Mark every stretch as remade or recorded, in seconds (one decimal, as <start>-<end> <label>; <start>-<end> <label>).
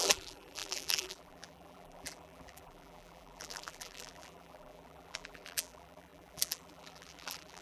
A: 0.0-7.6 remade